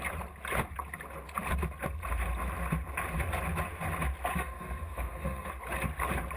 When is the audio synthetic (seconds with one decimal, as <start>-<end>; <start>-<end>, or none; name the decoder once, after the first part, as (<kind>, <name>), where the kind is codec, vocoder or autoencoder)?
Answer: 4.3-5.5 (codec, SNAC)